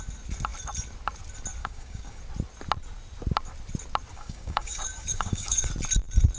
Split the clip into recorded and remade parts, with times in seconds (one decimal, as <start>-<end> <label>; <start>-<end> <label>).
0.0-1.6 recorded; 1.6-2.2 remade; 2.2-4.1 recorded; 4.1-5.7 remade; 5.7-6.4 recorded